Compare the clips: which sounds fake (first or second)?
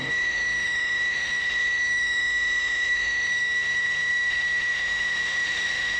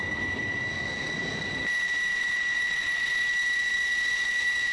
first